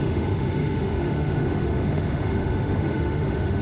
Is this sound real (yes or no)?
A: no